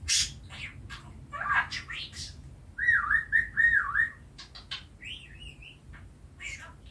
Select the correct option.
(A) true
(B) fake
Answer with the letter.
A